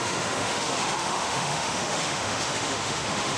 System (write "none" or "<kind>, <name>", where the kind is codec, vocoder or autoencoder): autoencoder, DAC-VAE